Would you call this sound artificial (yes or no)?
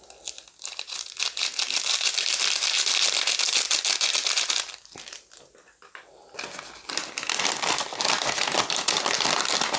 no